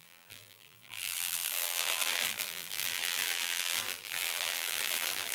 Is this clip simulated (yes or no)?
yes